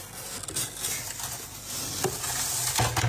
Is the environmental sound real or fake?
real